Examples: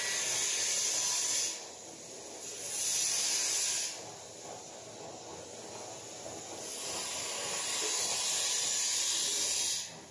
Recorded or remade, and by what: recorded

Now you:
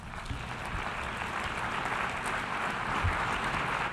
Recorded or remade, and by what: recorded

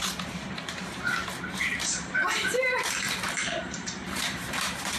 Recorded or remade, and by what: remade, vocoder, BigVGAN v2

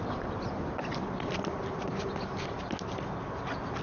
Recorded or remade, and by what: recorded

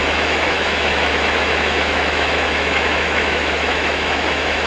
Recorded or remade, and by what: remade, autoencoder, DAC-VAE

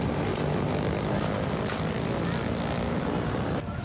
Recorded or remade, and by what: recorded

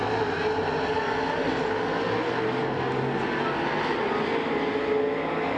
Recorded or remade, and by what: recorded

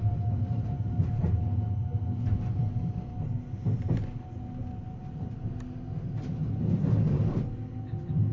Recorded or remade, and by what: recorded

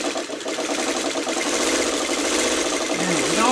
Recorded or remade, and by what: recorded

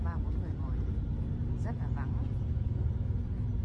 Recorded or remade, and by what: recorded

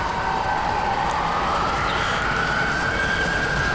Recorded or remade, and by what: recorded